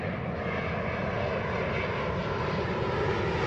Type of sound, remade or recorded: recorded